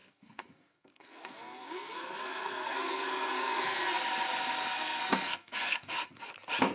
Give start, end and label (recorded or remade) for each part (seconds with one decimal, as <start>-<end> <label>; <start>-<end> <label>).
0.0-4.0 remade; 4.0-4.6 recorded; 4.6-6.2 remade; 6.2-6.7 recorded